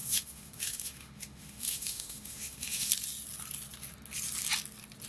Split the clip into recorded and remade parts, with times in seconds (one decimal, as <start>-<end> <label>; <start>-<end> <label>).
0.0-2.9 remade; 2.9-5.1 recorded